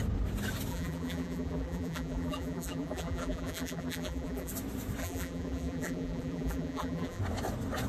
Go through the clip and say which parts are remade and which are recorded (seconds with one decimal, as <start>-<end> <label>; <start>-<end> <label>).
0.0-0.7 recorded; 0.7-4.5 remade; 4.5-5.0 recorded; 5.0-7.2 remade; 7.2-7.9 recorded